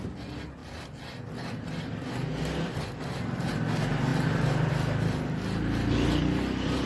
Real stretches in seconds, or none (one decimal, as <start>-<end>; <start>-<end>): 0.0-6.9